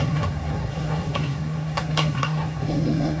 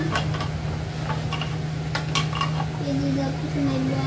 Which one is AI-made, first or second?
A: first